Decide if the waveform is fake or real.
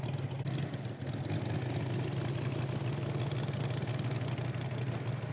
real